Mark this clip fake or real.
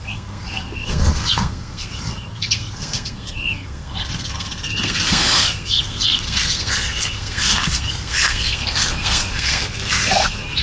fake